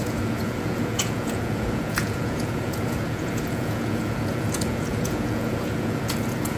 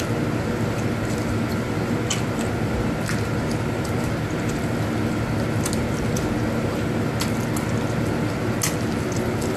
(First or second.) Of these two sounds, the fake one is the first